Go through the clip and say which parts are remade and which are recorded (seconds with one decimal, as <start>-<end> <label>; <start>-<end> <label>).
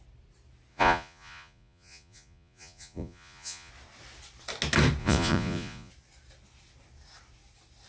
0.0-0.7 recorded; 0.7-3.7 remade; 3.7-5.0 recorded; 5.0-5.9 remade; 5.9-7.9 recorded